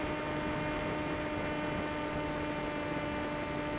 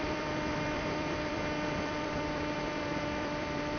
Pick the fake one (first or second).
second